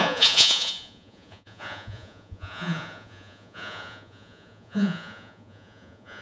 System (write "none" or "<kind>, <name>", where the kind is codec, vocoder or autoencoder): vocoder, Vocos